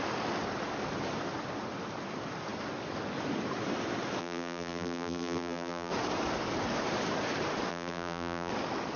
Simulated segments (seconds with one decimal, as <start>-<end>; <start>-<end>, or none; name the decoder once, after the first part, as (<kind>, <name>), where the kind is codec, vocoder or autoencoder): 4.2-5.9 (vocoder, BigVGAN v2); 7.7-8.5